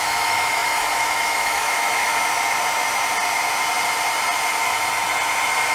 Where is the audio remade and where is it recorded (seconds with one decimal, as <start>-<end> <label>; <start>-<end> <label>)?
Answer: 0.0-2.1 remade; 2.1-5.7 recorded